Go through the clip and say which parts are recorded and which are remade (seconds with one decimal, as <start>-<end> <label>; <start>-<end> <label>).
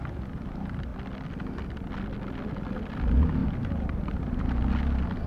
0.0-3.4 recorded; 3.4-4.6 remade; 4.6-5.3 recorded